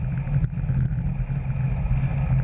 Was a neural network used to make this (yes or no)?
no